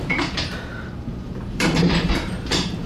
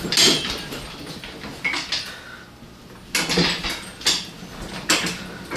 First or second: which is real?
second